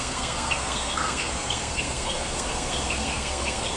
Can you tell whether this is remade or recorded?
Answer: remade